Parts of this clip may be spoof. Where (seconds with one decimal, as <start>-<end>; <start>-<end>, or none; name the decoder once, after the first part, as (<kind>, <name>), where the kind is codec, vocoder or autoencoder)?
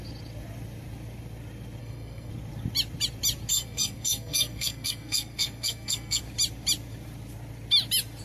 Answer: 1.8-2.3 (codec, SNAC); 3.5-6.2